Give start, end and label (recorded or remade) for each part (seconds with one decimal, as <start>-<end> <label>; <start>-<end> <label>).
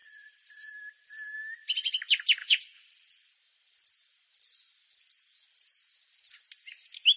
0.0-0.7 remade; 0.7-2.4 recorded; 2.4-3.3 remade; 3.3-7.2 recorded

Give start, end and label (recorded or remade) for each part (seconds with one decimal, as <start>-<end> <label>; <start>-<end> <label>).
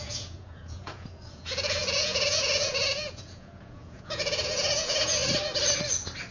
0.0-5.2 remade; 5.2-6.3 recorded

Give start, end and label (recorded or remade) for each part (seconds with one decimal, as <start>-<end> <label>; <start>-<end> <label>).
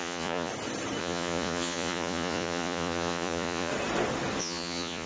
0.0-0.5 remade; 0.5-1.0 recorded; 1.0-3.7 remade; 3.7-4.4 recorded; 4.4-5.1 remade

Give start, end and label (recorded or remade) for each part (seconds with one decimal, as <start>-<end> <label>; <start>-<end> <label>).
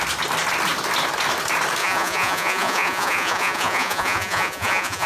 0.0-1.8 recorded; 1.8-5.1 remade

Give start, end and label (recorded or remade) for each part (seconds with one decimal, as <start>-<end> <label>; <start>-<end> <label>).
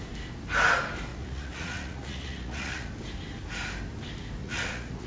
0.0-1.1 recorded; 1.1-2.9 remade; 2.9-4.4 recorded; 4.4-5.1 remade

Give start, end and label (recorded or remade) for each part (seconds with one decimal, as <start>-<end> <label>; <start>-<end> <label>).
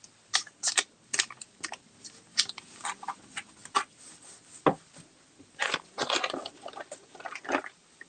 0.0-8.1 recorded